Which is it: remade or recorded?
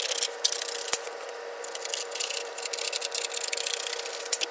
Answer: recorded